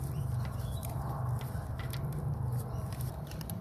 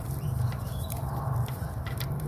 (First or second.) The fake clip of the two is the second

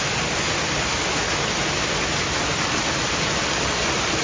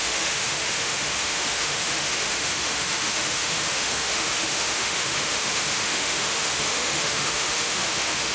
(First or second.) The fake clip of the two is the second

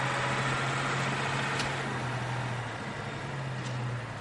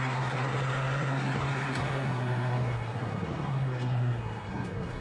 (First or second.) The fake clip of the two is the second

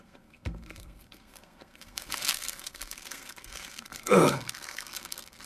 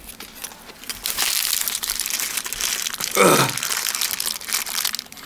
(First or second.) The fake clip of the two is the first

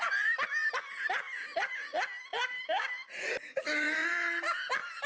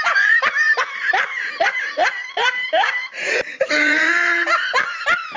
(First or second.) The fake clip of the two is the second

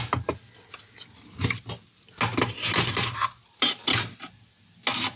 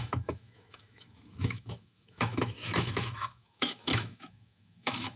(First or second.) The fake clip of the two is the second